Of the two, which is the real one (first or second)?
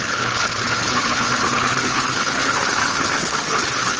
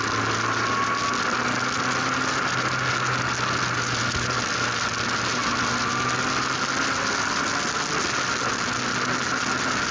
second